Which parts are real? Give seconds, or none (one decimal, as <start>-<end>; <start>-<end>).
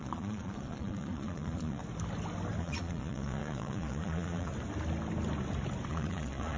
1.8-2.6; 4.5-5.9